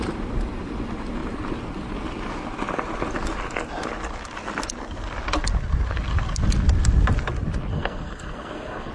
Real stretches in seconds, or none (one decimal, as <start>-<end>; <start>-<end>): 0.0-7.7